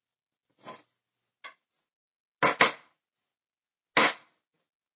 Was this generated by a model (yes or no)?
no